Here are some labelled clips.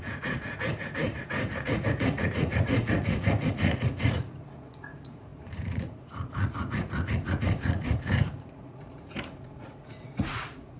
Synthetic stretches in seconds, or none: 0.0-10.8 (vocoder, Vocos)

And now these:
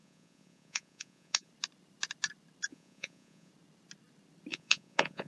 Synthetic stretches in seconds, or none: 0.0-1.5 (vocoder, Vocos); 2.7-3.5; 4.5-5.3